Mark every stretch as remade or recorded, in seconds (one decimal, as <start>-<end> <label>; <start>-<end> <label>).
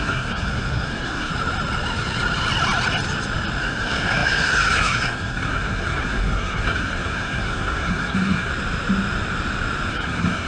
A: 0.0-1.3 remade; 1.3-3.6 recorded; 3.6-8.5 remade; 8.5-9.9 recorded; 9.9-10.5 remade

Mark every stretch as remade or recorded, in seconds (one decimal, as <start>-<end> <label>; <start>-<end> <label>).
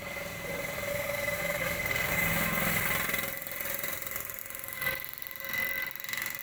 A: 0.0-0.9 recorded; 0.9-2.1 remade; 2.1-6.4 recorded